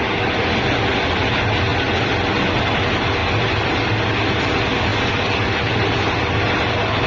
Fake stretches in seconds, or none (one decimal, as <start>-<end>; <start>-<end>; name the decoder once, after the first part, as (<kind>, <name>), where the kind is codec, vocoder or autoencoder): none